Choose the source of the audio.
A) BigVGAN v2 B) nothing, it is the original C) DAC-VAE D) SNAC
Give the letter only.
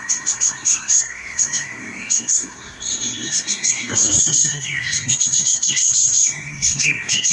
D